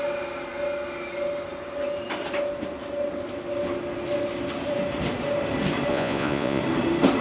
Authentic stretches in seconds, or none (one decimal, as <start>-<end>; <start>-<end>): 0.0-5.9; 6.6-7.2